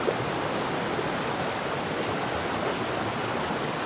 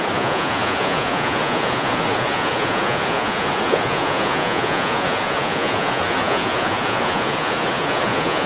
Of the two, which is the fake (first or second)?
second